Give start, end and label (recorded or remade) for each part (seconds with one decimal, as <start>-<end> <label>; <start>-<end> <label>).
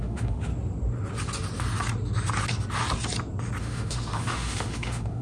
0.0-0.5 remade; 0.5-3.6 recorded; 3.6-5.2 remade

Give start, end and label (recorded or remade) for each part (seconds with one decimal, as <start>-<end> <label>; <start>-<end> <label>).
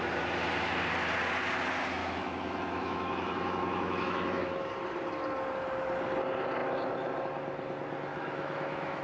0.0-2.0 recorded; 2.0-4.7 remade; 4.7-8.1 recorded; 8.1-9.0 remade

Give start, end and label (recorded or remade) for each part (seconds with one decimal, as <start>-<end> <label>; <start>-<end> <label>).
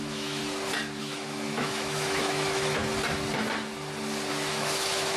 0.0-0.4 remade; 0.4-1.0 recorded; 1.0-2.8 remade; 2.8-4.3 recorded; 4.3-5.2 remade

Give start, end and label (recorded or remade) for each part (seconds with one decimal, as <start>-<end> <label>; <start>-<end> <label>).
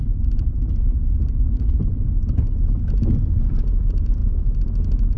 0.0-5.2 recorded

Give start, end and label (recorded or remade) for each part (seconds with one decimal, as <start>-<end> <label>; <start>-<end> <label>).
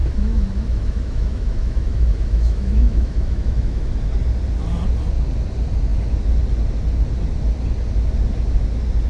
0.0-4.0 remade; 4.0-9.1 recorded